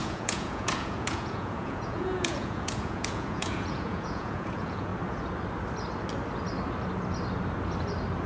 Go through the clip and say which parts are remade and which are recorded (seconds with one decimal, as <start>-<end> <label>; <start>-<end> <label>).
0.0-4.9 remade; 4.9-8.3 recorded